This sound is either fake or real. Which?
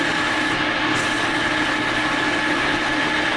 real